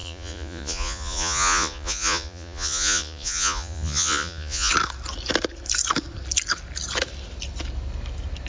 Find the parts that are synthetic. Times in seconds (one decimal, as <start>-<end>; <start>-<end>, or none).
0.0-4.7